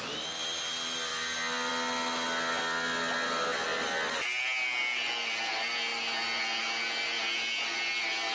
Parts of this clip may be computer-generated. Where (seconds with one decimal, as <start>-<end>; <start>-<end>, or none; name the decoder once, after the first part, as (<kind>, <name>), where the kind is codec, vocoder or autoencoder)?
none